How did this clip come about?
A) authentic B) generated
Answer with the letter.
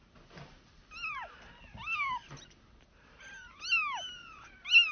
A